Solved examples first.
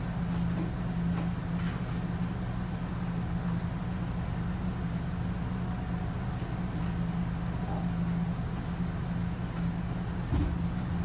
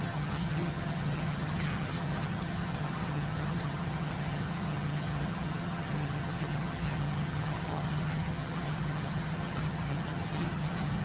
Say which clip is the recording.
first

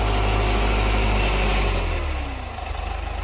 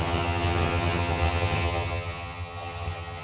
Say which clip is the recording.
first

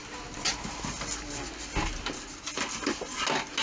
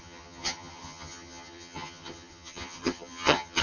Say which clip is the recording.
first